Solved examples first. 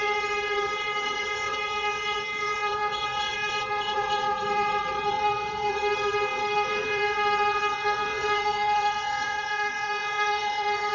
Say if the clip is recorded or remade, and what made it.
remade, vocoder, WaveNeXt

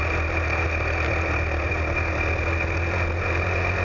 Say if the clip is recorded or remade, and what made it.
recorded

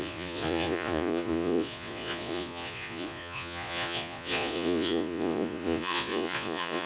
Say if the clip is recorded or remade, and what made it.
remade, vocoder, Vocos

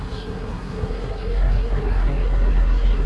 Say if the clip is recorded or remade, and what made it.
remade, codec, SNAC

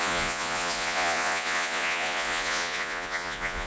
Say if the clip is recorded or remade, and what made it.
remade, vocoder, Vocos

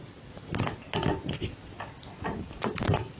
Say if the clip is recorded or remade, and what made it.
recorded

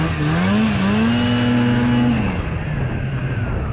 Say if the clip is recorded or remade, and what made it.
recorded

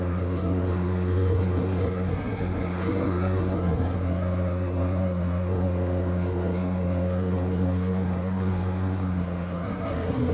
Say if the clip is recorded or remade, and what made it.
remade, codec, SNAC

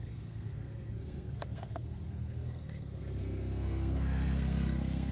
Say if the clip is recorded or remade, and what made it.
remade, codec, SNAC